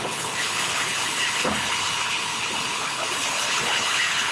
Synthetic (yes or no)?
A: yes